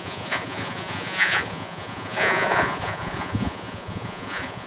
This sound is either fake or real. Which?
fake